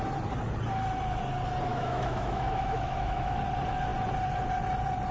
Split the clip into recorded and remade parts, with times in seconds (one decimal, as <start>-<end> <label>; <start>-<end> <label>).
0.0-1.7 recorded; 1.7-3.4 remade; 3.4-5.1 recorded

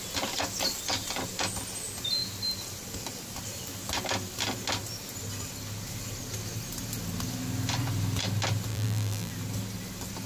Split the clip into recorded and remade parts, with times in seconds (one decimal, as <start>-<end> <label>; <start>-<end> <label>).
0.0-8.7 recorded; 8.7-9.3 remade; 9.3-10.3 recorded

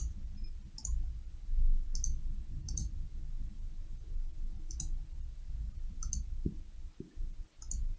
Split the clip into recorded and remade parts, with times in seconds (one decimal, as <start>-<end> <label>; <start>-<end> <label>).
0.0-8.0 recorded

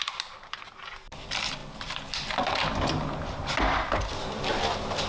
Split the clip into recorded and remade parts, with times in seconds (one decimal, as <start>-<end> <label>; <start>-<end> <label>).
0.0-5.1 recorded

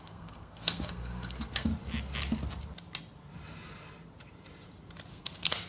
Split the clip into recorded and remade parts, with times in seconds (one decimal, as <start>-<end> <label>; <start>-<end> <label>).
0.0-1.7 remade; 1.7-5.1 recorded; 5.1-5.7 remade

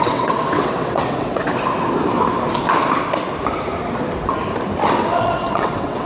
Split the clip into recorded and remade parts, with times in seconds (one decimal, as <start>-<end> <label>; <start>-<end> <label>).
0.0-1.5 remade; 1.5-5.2 recorded; 5.2-6.1 remade

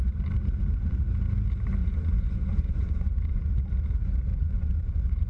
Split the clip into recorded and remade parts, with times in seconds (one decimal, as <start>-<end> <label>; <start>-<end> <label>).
0.0-1.8 recorded; 1.8-3.4 remade; 3.4-4.3 recorded; 4.3-5.3 remade